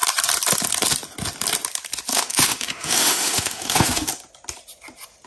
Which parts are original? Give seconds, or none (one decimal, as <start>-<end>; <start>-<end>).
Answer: 0.0-2.1; 4.1-5.3